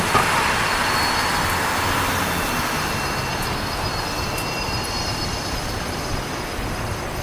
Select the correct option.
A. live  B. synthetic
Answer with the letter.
A